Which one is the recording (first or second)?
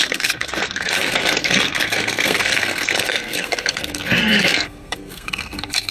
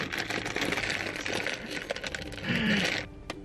second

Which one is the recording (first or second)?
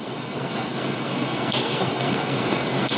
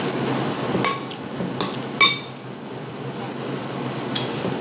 second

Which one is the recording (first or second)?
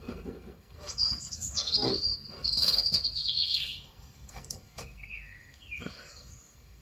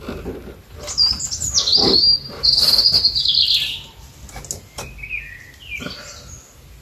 second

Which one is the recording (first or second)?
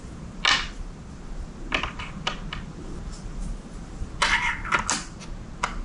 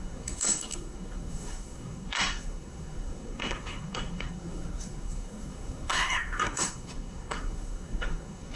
first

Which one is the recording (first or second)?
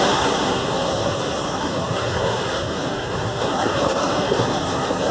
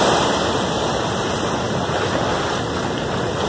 second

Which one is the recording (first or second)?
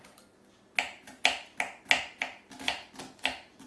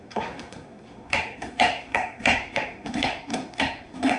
first